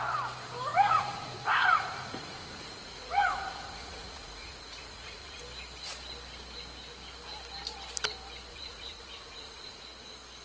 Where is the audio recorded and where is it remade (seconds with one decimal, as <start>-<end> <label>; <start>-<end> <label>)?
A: 0.0-0.7 recorded; 0.7-5.4 remade; 5.4-8.5 recorded; 8.5-9.8 remade; 9.8-10.4 recorded